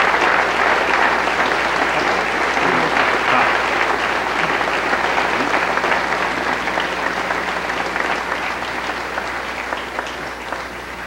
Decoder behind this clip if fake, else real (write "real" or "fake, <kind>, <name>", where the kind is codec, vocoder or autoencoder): real